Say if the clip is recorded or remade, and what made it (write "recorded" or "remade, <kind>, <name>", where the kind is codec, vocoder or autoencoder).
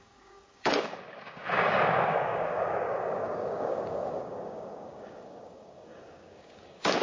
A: remade, codec, DAC